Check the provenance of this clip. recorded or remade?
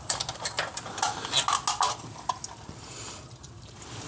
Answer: recorded